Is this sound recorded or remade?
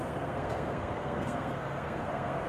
remade